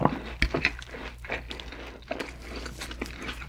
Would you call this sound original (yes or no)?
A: yes